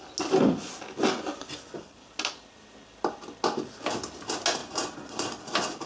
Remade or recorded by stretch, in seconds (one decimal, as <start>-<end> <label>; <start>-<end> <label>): 0.0-4.6 recorded; 4.6-5.4 remade; 5.4-5.9 recorded